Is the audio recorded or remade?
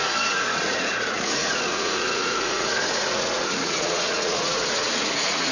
remade